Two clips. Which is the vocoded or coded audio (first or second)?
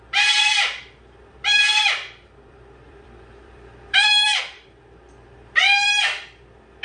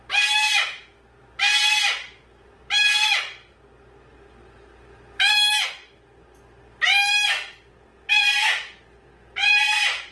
first